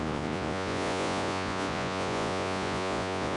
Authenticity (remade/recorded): remade